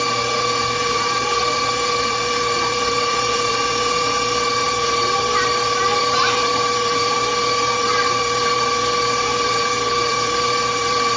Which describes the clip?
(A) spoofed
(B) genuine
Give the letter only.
A